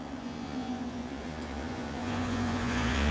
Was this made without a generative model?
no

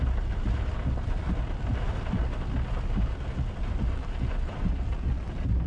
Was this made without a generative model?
yes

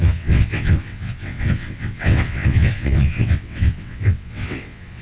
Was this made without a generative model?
no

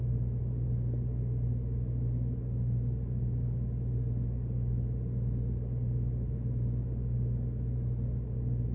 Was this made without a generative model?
yes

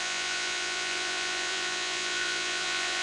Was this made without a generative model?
no